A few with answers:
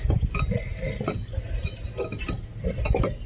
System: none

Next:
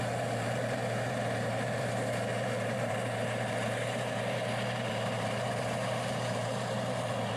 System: vocoder, BigVGAN v2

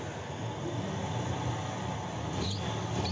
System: none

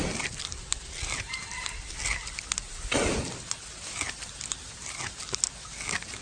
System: none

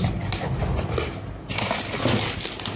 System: none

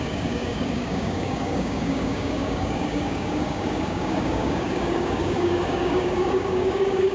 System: codec, DAC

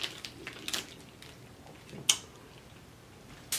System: none